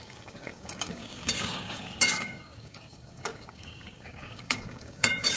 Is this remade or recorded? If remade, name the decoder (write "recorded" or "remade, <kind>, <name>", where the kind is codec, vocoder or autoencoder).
remade, codec, DAC